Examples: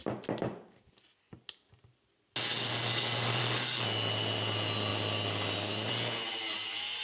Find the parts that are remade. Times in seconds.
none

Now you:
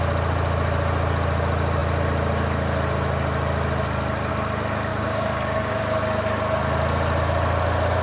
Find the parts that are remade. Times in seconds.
4.9-5.8 (codec, DAC)

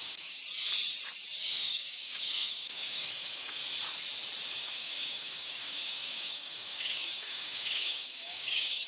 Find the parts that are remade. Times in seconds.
0.0-0.4 (codec, DAC); 1.5-3.6; 4.5-8.9

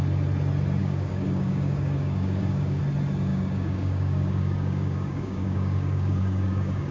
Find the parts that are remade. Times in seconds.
0.8-2.8 (codec, DAC); 3.3-6.9

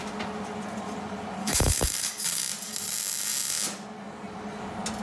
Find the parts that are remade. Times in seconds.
1.4-2.4 (codec, DAC)

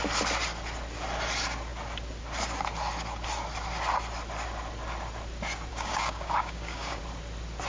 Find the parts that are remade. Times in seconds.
5.7-7.0 (codec, DAC)